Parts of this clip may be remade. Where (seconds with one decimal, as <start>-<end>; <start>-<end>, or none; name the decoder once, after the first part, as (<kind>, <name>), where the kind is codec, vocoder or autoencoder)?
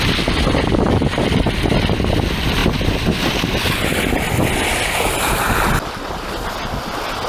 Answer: none